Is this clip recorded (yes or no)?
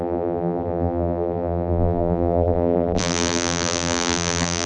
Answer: no